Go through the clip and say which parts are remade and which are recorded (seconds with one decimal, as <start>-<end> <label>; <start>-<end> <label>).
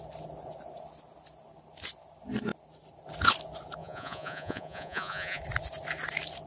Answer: 0.0-3.8 recorded; 3.8-5.4 remade; 5.4-6.5 recorded